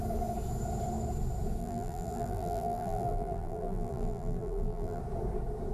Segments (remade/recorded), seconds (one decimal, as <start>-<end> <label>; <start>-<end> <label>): 0.0-1.6 recorded; 1.6-5.0 remade; 5.0-5.7 recorded